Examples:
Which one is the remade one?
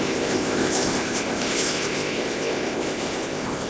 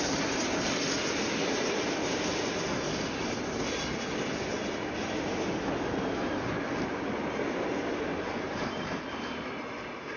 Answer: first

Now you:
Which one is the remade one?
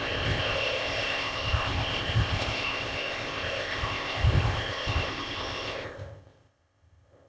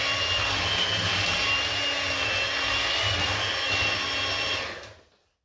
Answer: first